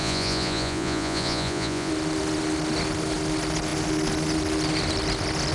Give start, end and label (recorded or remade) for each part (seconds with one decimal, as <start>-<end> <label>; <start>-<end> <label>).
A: 0.0-1.9 remade; 1.9-5.5 recorded